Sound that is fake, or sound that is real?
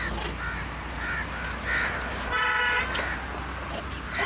real